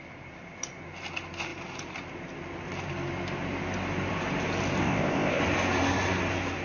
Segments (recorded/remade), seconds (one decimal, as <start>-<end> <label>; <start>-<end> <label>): 0.0-4.8 recorded; 4.8-5.4 remade; 5.4-6.6 recorded